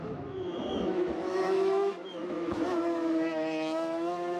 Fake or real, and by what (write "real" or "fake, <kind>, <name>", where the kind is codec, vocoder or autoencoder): fake, autoencoder, DAC-VAE